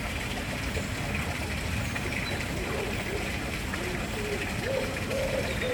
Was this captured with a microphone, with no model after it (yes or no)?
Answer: yes